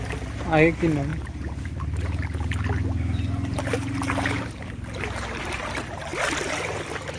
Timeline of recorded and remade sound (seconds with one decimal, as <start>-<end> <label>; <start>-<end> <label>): 0.0-7.2 recorded